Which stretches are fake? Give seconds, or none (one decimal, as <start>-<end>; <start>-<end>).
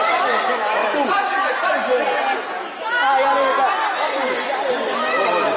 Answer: none